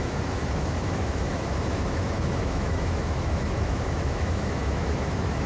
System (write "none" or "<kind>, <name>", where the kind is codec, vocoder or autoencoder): autoencoder, DAC-VAE